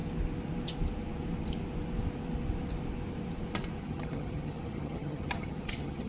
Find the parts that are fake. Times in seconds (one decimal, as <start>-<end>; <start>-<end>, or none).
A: 3.8-6.1